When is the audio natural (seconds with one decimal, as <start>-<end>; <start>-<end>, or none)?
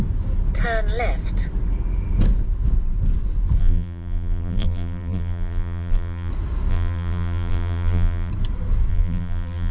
0.0-3.6; 6.3-6.7; 8.3-8.9